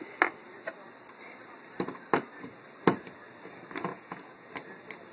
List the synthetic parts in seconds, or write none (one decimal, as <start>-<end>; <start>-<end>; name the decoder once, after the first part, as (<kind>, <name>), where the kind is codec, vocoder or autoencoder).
3.9-4.5 (vocoder, Vocos)